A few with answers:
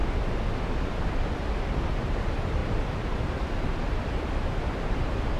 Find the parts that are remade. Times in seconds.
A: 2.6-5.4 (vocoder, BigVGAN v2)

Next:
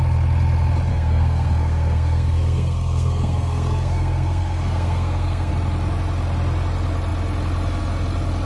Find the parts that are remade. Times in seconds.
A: 0.9-5.5 (codec, SNAC)

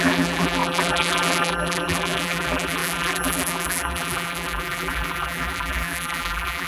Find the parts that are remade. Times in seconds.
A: 0.0-6.7 (vocoder, BigVGAN v2)

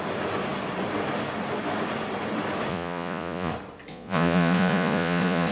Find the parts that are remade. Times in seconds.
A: 2.7-3.5 (vocoder, Vocos); 3.9-5.5

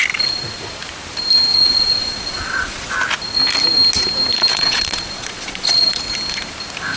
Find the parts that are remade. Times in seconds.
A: 1.5-2.9 (vocoder, Vocos); 4.5-6.0

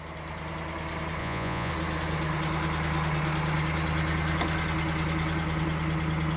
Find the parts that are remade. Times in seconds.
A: 1.2-1.7 (vocoder, Vocos)

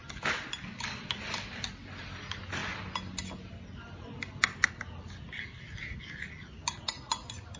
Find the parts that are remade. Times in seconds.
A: none

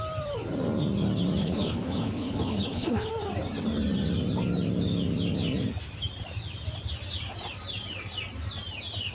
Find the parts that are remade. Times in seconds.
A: 1.4-3.1 (codec, HILCodec)